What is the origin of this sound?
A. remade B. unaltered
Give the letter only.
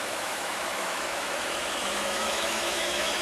A